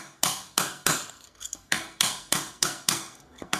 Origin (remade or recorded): remade